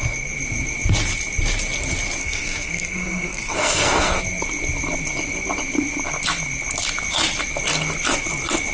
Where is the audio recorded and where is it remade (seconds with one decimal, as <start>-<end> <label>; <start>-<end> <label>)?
0.0-2.2 recorded; 2.2-4.2 remade; 4.2-8.7 recorded